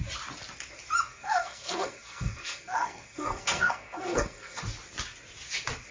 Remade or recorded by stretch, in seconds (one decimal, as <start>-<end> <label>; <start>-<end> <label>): 0.0-1.1 recorded; 1.1-4.6 remade; 4.6-5.9 recorded